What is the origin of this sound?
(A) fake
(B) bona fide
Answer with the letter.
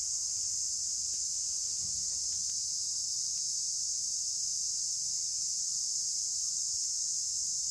B